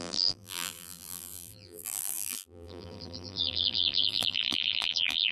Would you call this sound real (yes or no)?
no